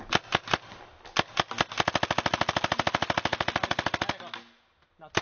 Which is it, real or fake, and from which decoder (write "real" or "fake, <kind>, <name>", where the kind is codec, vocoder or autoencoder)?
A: real